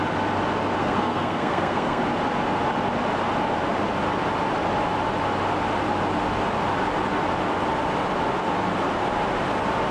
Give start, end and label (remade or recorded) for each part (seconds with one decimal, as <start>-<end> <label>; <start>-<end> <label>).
0.0-0.8 recorded; 0.8-2.0 remade; 2.0-9.9 recorded